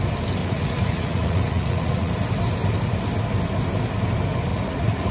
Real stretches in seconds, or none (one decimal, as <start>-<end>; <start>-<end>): 0.0-0.4; 2.1-4.5